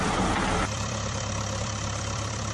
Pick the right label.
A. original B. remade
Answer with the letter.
B